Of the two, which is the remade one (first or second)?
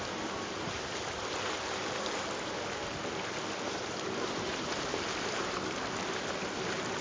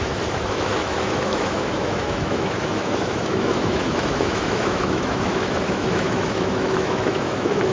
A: second